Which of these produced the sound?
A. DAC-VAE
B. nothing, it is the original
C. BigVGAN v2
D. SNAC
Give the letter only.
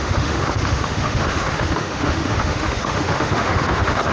A